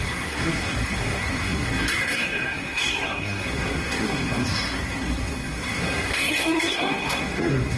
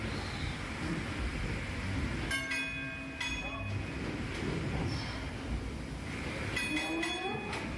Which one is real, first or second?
second